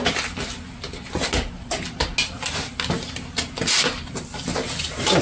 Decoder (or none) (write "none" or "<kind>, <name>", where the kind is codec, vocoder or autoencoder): none